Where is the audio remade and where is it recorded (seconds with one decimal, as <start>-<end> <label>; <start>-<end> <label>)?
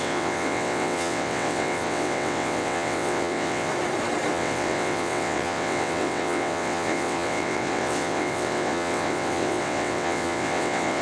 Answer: 0.0-3.7 remade; 3.7-4.3 recorded; 4.3-11.0 remade